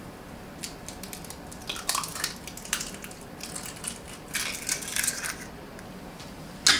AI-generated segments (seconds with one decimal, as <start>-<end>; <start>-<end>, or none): none